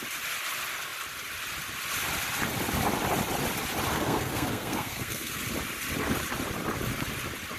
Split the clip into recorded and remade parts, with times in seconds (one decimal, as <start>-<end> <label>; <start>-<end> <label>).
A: 0.0-3.9 recorded; 3.9-5.4 remade; 5.4-7.6 recorded